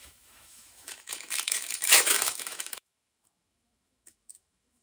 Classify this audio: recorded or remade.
remade